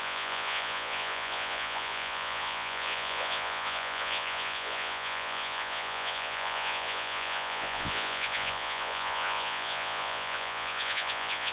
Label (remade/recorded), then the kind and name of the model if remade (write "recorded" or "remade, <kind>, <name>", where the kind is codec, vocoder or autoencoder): remade, vocoder, Vocos